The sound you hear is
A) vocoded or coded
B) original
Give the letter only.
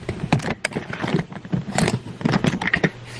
B